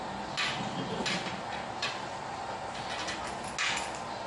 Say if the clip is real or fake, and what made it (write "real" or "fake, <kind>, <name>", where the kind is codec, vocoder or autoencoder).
real